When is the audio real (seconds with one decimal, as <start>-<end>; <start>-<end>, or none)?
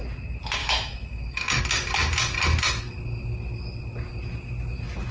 0.0-0.6; 1.6-5.1